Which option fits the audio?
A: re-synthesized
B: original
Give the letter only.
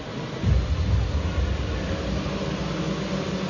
B